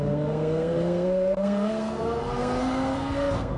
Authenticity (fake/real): fake